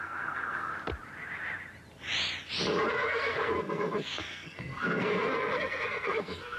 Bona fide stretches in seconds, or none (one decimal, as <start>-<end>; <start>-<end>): 0.7-2.9